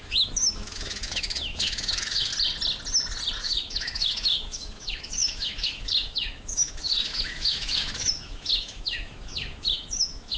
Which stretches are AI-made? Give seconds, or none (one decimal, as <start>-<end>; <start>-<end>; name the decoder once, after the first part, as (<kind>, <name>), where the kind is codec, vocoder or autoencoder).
0.0-2.3 (autoencoder, DAC-VAE); 3.4-10.4